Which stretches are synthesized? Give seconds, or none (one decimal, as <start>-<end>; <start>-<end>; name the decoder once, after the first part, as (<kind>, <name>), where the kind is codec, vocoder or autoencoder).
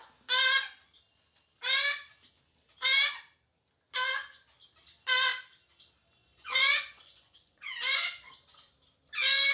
6.2-8.3 (vocoder, Vocos)